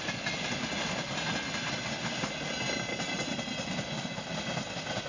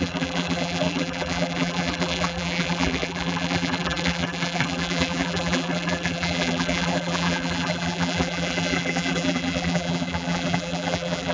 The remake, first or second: second